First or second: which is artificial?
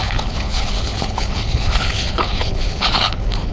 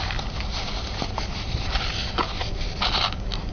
first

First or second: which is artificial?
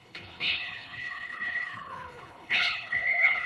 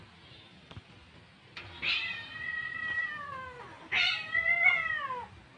first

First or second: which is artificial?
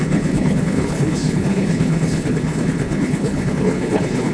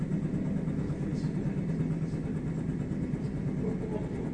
first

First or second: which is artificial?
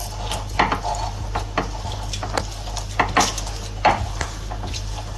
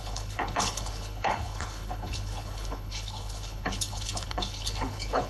second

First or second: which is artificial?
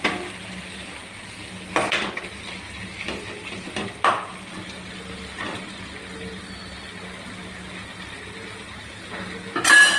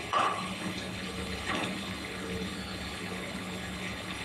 second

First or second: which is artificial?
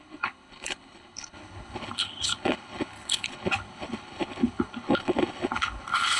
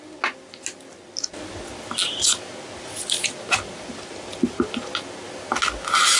first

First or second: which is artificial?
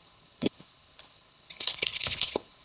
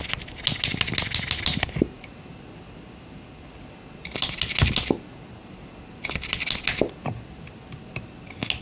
first